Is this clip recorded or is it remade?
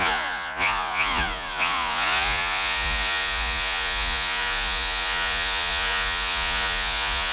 remade